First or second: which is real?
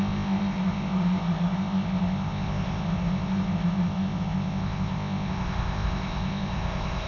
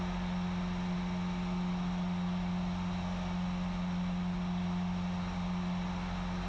second